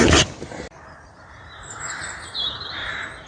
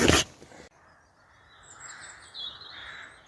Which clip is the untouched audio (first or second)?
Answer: second